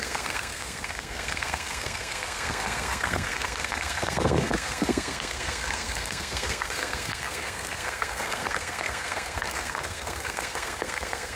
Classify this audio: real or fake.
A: fake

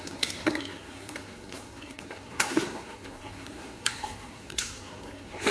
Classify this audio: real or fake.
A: fake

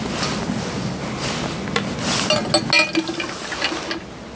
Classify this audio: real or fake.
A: real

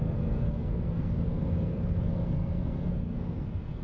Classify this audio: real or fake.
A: fake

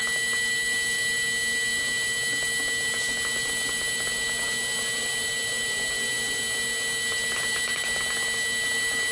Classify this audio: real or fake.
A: real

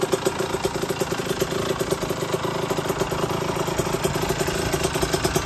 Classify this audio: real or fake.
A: real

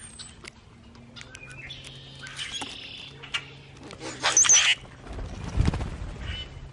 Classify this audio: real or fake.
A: real